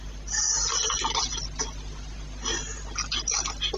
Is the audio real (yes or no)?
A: yes